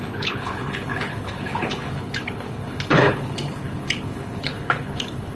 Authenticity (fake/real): fake